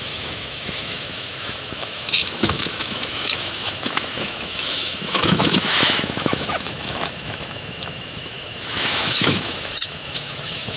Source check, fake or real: fake